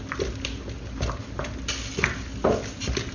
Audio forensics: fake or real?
real